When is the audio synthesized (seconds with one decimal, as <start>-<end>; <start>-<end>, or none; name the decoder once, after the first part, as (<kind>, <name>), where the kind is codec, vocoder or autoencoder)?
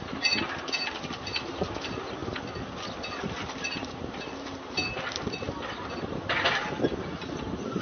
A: none